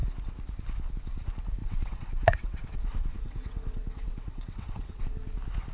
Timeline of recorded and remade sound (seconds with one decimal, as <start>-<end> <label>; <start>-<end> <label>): 0.0-1.6 recorded; 1.6-5.0 remade; 5.0-5.7 recorded